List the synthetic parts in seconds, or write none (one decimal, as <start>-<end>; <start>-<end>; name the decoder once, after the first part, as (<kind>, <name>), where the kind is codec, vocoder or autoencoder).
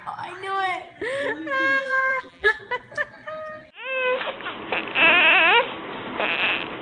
1.8-2.6 (vocoder, BigVGAN v2)